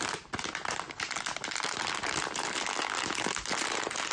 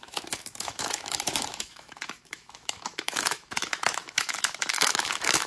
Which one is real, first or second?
first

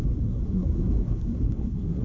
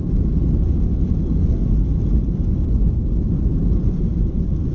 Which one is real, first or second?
second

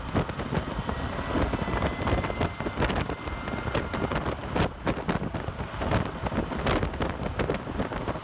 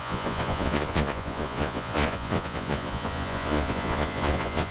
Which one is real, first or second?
first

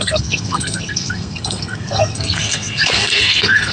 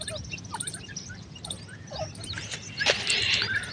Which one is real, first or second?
second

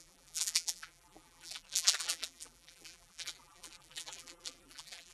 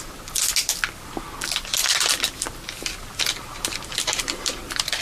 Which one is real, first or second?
second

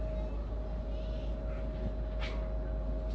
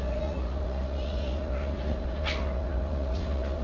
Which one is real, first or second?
first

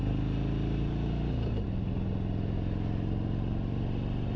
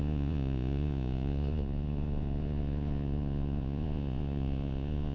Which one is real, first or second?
first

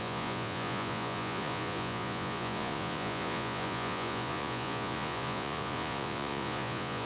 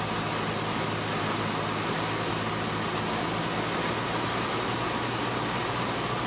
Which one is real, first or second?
second